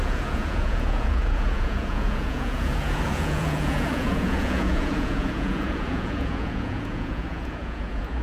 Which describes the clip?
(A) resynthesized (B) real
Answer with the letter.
A